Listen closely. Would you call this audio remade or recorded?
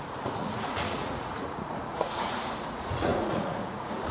remade